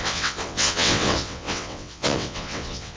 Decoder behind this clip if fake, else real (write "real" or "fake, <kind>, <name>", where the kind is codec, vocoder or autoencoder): fake, vocoder, WaveNeXt